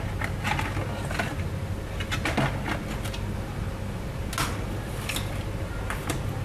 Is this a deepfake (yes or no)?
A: no